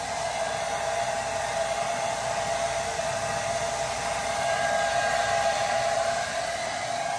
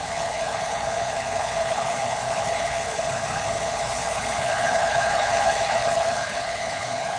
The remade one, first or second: second